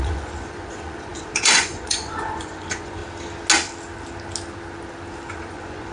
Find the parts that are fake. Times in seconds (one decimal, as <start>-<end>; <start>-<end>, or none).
0.0-3.0; 5.3-5.9